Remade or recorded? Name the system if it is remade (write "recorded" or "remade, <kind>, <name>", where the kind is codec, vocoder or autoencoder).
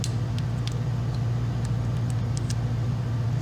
recorded